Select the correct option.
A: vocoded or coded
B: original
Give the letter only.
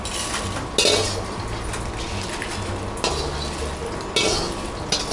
B